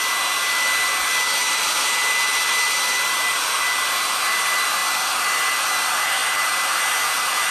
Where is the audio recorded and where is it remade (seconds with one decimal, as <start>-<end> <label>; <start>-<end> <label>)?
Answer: 0.0-7.5 recorded